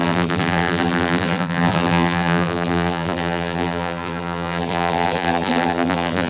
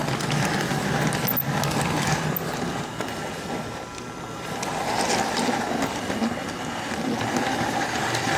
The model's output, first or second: first